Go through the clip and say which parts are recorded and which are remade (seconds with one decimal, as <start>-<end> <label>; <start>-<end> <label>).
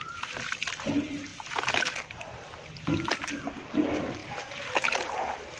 0.0-5.6 recorded